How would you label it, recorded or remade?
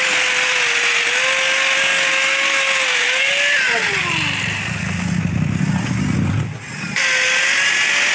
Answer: recorded